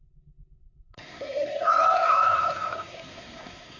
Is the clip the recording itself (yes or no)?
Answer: no